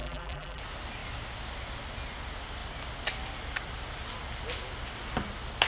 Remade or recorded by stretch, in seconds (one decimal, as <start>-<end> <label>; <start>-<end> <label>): 0.0-0.6 remade; 0.6-5.7 recorded

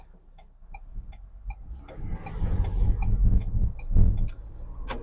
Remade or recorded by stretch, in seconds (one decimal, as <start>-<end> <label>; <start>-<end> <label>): 0.0-3.4 recorded; 3.4-4.6 remade; 4.6-5.0 recorded